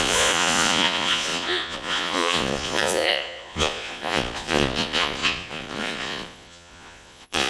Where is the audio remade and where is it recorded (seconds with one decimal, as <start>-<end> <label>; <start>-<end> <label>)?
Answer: 0.0-7.5 remade